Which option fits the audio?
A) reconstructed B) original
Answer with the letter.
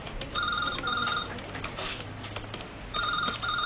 B